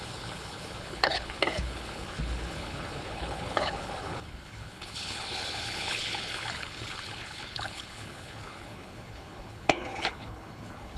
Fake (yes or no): yes